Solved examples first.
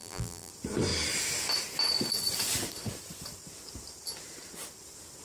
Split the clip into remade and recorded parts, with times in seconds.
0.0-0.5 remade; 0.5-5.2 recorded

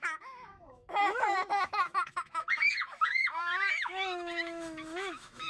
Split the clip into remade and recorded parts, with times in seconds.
0.0-5.5 remade